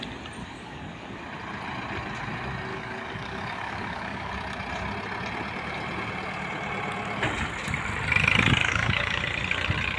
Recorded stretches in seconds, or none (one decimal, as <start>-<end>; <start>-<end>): 0.0-0.4; 1.2-2.7; 4.3-8.6; 9.2-10.0